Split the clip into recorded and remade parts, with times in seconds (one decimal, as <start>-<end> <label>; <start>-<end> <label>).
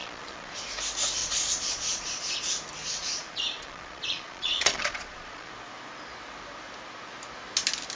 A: 0.0-0.5 remade; 0.5-1.2 recorded; 1.2-2.2 remade; 2.2-2.8 recorded; 2.8-5.5 remade; 5.5-8.0 recorded